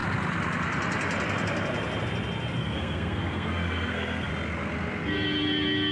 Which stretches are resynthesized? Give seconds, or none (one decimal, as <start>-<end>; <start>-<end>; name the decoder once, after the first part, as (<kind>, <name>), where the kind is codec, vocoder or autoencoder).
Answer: 2.6-4.3 (codec, SNAC)